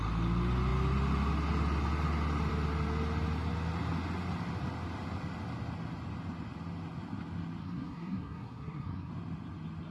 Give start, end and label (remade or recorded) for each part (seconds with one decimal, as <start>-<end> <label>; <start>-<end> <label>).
0.0-7.6 recorded; 7.6-9.1 remade; 9.1-9.9 recorded